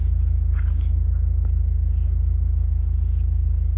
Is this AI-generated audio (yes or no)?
no